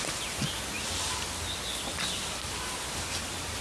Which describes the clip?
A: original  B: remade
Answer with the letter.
A